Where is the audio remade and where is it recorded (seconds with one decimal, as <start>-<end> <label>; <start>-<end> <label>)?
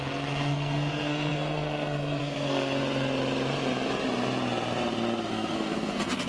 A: 0.0-2.8 remade; 2.8-5.3 recorded; 5.3-6.3 remade